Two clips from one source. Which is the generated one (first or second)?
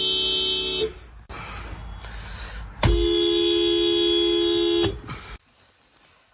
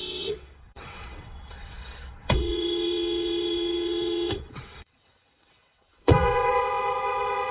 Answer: second